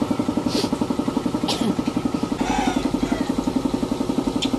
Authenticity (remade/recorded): recorded